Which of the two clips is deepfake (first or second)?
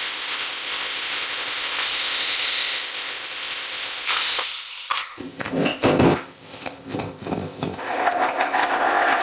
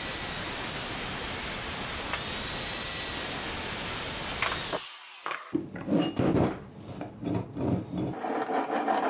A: first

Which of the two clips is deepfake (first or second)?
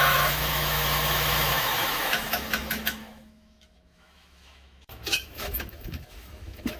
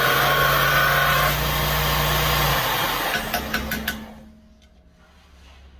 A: first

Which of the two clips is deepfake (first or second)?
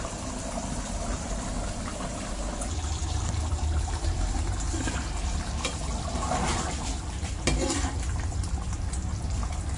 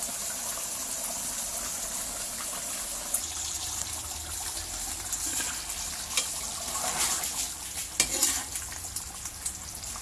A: first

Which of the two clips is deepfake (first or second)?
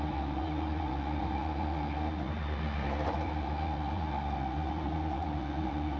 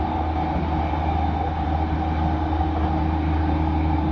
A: first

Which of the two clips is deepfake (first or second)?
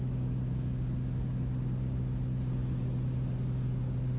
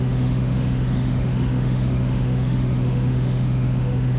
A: second